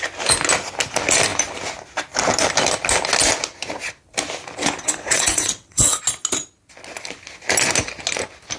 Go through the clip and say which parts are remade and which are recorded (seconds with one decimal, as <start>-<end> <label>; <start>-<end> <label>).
0.0-4.8 recorded; 4.8-6.0 remade; 6.0-8.6 recorded